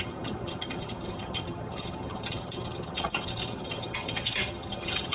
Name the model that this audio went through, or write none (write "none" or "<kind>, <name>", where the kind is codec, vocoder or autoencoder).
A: vocoder, HiFi-GAN